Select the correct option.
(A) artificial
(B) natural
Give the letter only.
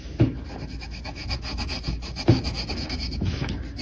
A